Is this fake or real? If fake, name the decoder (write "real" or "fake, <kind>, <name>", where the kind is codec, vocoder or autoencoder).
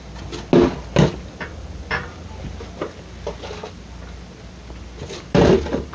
real